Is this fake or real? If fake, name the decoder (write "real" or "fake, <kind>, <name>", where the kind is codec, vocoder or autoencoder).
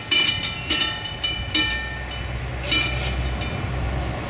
real